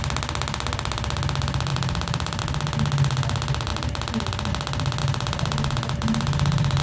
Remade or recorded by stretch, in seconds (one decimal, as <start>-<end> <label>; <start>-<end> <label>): 0.0-1.7 recorded; 1.7-2.4 remade; 2.4-5.0 recorded; 5.0-6.8 remade